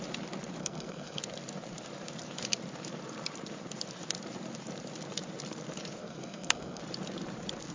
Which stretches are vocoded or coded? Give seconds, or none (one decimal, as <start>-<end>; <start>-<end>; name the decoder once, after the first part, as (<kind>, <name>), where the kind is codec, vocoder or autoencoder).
0.6-1.2 (codec, SNAC); 6.0-6.8